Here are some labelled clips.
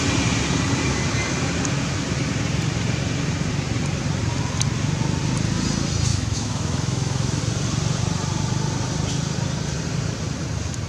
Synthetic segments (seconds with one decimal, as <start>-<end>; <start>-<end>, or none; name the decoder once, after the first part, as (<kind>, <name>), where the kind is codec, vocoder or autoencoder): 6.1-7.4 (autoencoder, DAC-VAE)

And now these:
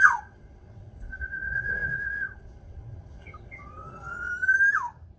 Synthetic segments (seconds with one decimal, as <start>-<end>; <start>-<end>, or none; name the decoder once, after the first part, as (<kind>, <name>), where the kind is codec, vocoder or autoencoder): 0.0-4.3 (vocoder, WaveNeXt)

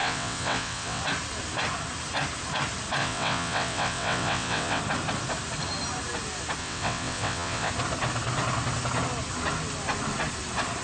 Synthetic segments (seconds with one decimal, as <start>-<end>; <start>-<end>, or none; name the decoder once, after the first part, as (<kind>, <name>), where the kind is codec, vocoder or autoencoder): 0.0-1.0 (vocoder, WaveNeXt); 3.0-4.8; 6.6-7.7

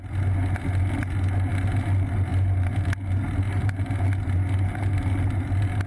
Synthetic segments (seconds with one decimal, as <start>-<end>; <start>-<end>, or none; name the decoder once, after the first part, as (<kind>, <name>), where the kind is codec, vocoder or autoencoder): none

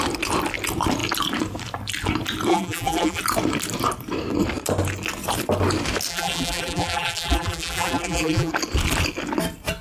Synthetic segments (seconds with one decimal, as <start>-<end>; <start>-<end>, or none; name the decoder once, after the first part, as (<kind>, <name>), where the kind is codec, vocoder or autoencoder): 2.5-3.2 (vocoder, BigVGAN v2); 6.1-8.5